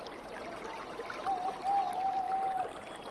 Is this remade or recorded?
recorded